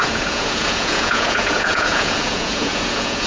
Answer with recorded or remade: remade